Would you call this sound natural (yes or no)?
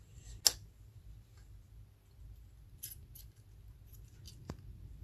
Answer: yes